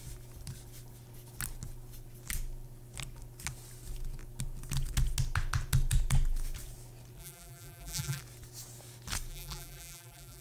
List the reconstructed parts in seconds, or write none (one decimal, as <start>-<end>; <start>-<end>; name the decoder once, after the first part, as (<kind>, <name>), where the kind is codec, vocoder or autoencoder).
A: 7.2-8.2 (vocoder, BigVGAN v2); 9.3-10.4